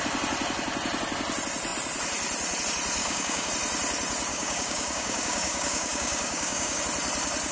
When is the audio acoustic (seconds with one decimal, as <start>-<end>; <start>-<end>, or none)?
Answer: 0.0-3.0; 3.5-4.3; 6.8-7.5